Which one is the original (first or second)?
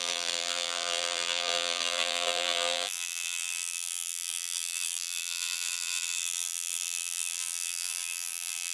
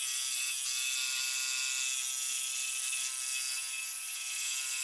second